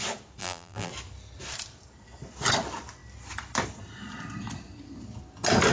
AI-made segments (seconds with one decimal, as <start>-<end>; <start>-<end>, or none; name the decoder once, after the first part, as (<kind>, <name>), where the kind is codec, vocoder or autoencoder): 0.4-0.9 (vocoder, BigVGAN v2)